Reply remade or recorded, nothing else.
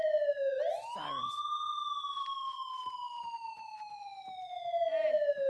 recorded